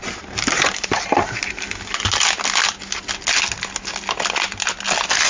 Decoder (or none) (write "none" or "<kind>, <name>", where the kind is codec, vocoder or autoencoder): none